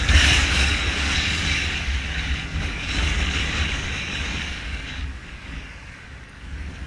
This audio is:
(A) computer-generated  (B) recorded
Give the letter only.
A